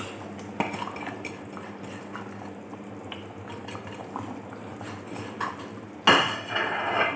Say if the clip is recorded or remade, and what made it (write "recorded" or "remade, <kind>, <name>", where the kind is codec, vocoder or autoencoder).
recorded